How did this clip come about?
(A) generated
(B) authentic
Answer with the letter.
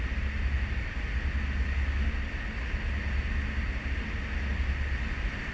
B